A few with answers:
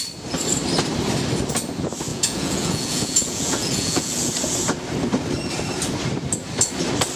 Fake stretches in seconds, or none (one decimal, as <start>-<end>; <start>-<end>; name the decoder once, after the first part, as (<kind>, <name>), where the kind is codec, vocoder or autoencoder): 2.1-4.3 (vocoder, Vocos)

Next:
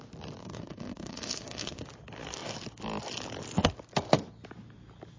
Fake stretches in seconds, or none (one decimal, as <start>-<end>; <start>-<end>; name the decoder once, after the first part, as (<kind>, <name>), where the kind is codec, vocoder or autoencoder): 0.4-1.8 (autoencoder, DAC-VAE)

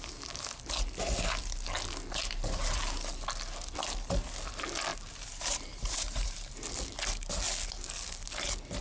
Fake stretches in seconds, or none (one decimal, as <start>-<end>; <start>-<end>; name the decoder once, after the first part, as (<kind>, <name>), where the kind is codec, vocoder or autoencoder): 4.9-6.5 (vocoder, BigVGAN v2)

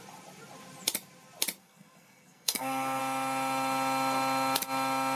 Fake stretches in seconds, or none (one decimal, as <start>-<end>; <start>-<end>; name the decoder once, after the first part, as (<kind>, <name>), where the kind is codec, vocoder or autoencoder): 1.6-3.0 (codec, SNAC)